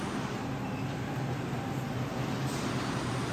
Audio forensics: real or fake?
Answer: real